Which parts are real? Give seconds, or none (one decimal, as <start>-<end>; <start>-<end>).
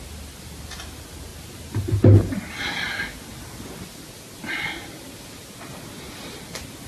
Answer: 0.0-6.9